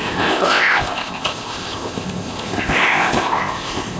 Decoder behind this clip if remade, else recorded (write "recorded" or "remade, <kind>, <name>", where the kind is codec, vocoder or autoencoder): remade, codec, ZipCodec